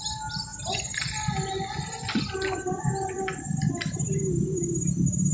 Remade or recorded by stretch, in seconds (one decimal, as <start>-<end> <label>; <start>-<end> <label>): 0.0-5.3 recorded